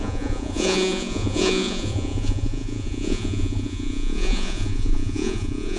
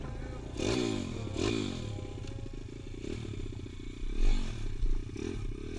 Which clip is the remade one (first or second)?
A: first